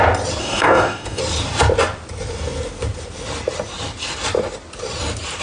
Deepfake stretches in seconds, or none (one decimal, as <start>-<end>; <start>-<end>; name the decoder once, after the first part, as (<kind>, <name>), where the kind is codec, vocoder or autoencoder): 0.4-1.2 (codec, DAC)

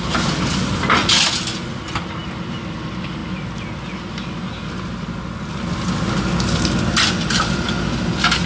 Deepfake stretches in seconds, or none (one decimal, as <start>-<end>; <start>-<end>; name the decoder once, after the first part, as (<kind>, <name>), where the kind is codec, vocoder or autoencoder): none